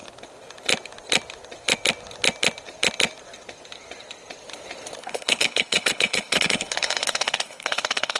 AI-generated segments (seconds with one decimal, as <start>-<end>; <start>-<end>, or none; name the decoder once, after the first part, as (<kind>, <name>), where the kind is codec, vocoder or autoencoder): 5.0-8.2 (codec, HILCodec)